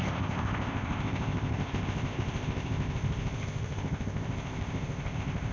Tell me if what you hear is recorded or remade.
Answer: remade